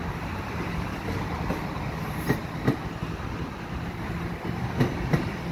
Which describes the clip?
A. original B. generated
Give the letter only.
A